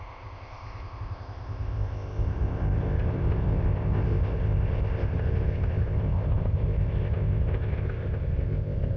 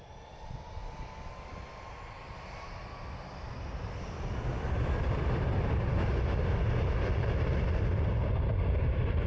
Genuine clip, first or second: second